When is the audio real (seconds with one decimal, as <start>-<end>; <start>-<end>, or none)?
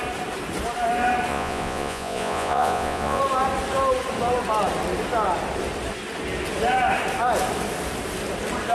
0.0-1.3; 3.2-8.7